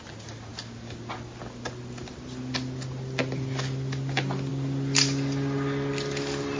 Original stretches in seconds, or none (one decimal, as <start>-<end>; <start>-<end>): 0.0-6.6